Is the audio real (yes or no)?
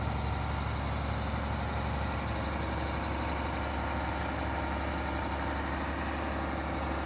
yes